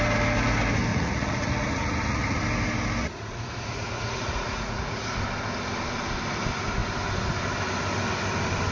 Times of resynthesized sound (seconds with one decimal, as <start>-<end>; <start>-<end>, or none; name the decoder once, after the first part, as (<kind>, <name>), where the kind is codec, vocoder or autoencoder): 0.9-2.4 (vocoder, Vocos); 3.0-5.2